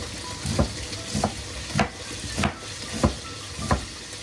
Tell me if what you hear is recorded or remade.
recorded